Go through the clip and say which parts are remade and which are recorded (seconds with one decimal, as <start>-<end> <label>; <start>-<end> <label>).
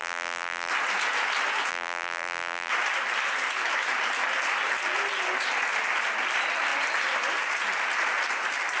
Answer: 0.0-0.7 remade; 0.7-1.7 recorded; 1.7-2.7 remade; 2.7-8.8 recorded